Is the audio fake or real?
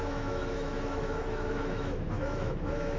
fake